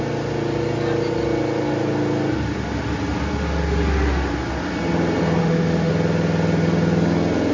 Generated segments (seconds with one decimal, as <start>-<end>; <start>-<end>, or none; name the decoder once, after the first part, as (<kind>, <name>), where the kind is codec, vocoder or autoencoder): 5.4-5.9 (autoencoder, DAC-VAE)